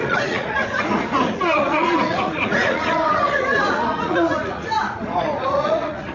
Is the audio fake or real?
fake